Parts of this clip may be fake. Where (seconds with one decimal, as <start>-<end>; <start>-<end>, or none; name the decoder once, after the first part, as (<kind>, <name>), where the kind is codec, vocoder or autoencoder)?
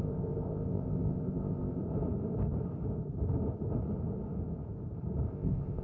0.0-1.8 (codec, ZipCodec); 5.3-5.8